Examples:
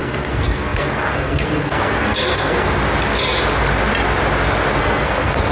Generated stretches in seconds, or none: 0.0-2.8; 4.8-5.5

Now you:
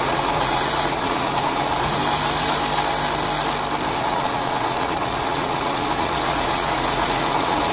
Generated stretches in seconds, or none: 0.0-2.0; 3.9-7.7